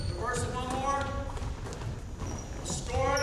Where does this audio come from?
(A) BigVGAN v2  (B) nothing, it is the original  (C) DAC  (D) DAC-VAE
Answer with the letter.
B